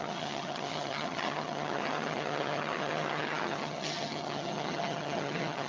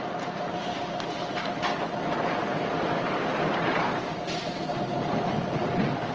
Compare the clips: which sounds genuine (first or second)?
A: second